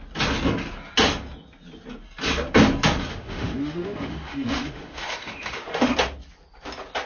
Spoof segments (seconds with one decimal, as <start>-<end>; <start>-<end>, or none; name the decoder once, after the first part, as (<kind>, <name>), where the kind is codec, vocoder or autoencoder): 3.1-5.9 (autoencoder, DAC-VAE)